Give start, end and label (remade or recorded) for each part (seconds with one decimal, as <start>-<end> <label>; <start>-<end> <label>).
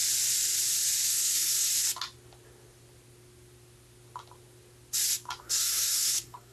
0.0-1.1 recorded; 1.1-1.7 remade; 1.7-5.4 recorded; 5.4-6.5 remade